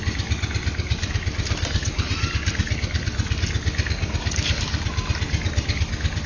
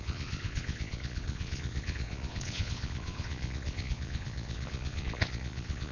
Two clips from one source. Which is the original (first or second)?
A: first